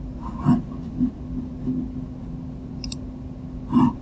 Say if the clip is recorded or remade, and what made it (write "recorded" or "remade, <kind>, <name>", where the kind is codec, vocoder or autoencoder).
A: recorded